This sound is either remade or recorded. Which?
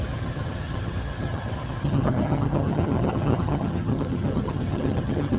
remade